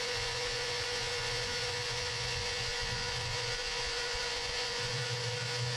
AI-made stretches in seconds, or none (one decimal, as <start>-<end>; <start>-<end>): 0.0-5.8